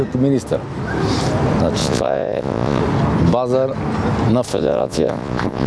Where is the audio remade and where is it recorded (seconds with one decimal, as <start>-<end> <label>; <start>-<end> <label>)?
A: 0.0-1.8 recorded; 1.8-2.8 remade; 2.8-4.5 recorded; 4.5-5.7 remade